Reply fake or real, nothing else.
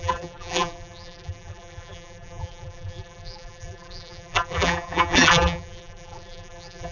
fake